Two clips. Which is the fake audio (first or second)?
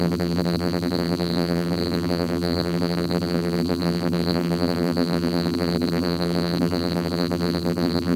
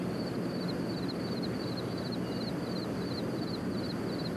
first